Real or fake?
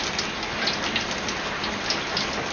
real